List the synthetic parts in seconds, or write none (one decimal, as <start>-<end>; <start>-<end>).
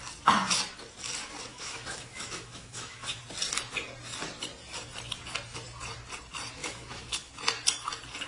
1.5-3.2; 6.6-7.3